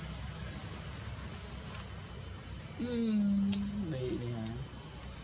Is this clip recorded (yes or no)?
yes